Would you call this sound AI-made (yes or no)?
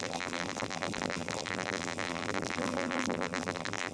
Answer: yes